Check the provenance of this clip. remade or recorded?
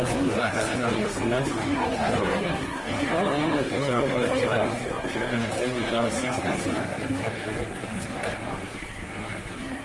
remade